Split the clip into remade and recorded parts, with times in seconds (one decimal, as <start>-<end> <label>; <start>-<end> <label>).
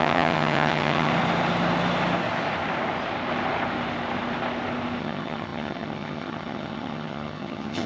0.0-1.1 remade; 1.1-5.0 recorded; 5.0-7.9 remade